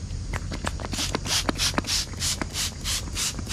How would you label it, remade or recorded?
remade